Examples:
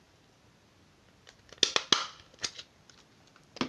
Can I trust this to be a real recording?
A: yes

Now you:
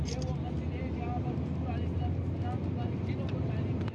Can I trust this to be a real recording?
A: yes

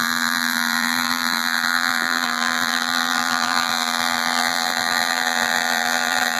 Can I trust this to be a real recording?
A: no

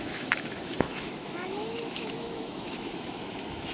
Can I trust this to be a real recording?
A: no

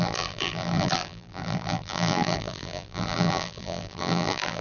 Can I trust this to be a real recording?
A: no